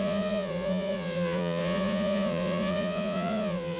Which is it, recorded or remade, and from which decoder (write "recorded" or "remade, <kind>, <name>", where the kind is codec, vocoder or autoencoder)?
remade, vocoder, Vocos